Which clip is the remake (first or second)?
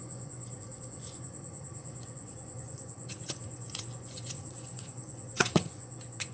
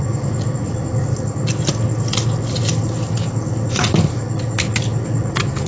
first